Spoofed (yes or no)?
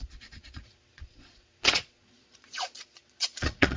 yes